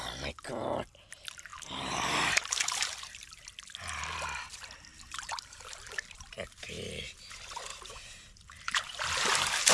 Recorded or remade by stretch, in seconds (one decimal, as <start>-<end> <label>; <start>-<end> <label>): 0.0-1.5 recorded; 1.5-3.0 remade; 3.0-4.9 recorded; 4.9-7.2 remade; 7.2-7.7 recorded; 7.7-9.7 remade